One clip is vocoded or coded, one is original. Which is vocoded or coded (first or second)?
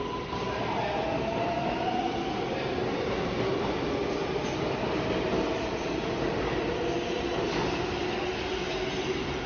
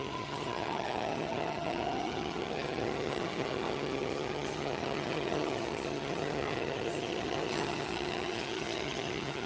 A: second